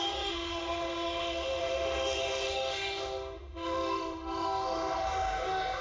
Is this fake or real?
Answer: fake